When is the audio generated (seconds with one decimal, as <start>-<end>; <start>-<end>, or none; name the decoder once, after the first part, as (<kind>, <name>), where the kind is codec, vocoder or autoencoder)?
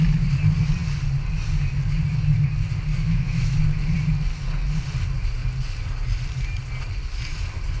2.9-3.6 (autoencoder, DAC-VAE)